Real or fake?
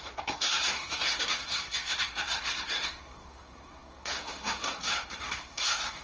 fake